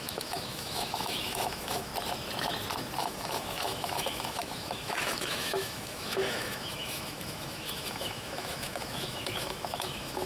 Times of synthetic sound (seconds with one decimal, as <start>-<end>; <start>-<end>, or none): 0.0-1.9; 3.0-10.3